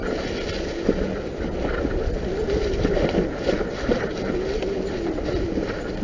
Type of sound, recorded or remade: recorded